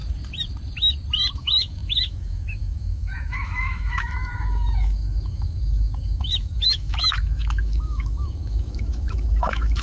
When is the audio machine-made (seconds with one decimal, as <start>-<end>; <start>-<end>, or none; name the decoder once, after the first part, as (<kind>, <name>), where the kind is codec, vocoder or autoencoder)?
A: 1.4-9.8 (autoencoder, DAC-VAE)